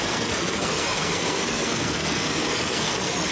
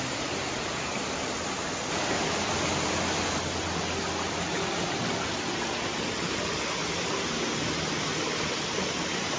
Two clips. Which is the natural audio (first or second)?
second